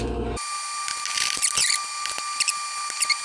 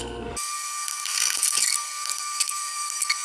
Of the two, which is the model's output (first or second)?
second